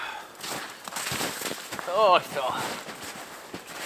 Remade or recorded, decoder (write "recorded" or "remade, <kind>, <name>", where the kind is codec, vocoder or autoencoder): recorded